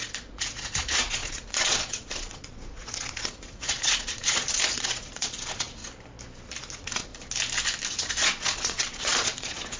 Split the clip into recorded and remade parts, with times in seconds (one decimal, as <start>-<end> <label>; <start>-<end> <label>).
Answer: 0.0-5.8 remade; 5.8-6.6 recorded; 6.6-7.1 remade; 7.1-7.9 recorded; 7.9-9.8 remade